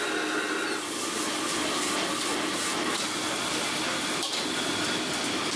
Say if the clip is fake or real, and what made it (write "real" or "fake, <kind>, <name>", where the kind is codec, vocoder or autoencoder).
real